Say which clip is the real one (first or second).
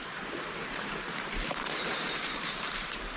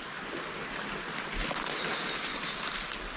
second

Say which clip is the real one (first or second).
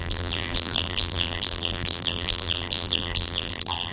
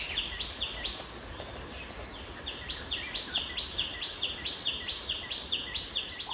second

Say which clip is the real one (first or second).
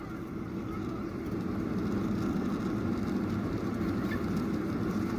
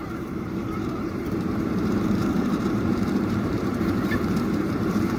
first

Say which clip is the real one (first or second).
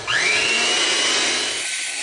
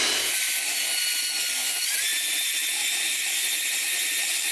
first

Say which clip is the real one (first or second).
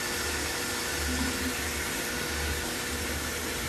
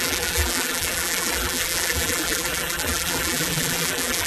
first